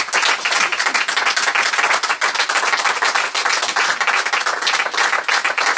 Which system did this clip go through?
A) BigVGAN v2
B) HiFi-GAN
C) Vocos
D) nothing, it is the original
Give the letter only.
D